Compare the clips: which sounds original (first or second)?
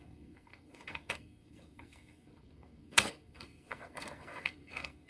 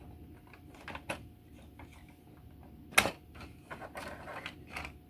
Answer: second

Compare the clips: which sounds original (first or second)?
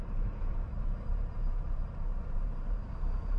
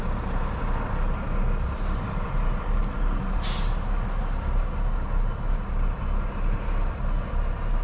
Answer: second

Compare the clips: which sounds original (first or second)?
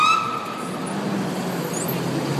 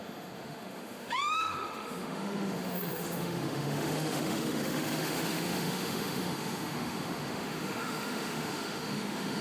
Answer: first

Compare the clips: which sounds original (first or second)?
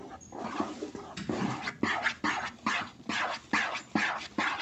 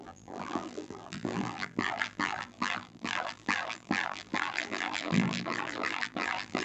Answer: first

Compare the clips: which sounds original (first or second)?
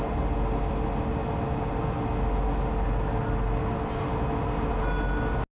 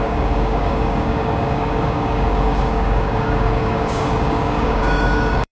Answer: first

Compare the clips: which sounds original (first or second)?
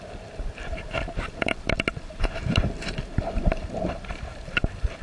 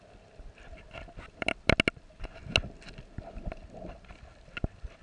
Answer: second